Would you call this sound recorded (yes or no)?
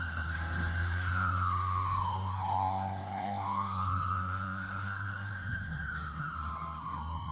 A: no